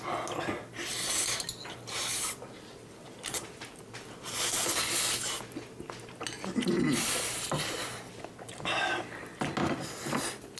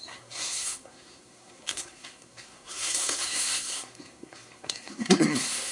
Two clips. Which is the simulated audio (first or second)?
second